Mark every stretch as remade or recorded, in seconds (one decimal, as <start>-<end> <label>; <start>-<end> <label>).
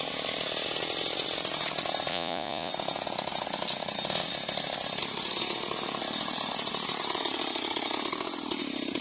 0.0-2.1 recorded; 2.1-2.7 remade; 2.7-9.0 recorded